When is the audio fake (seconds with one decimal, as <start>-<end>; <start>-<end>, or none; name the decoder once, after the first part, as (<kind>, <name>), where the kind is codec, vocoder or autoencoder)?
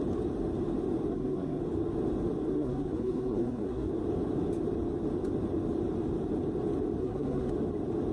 1.1-1.6 (codec, SNAC); 2.5-3.9; 7.0-7.5